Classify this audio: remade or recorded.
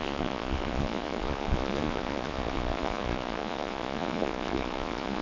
remade